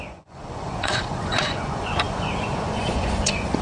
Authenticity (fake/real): fake